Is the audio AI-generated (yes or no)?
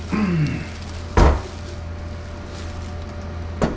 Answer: no